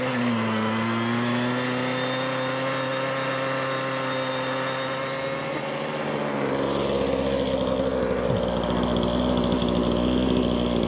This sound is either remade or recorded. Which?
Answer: recorded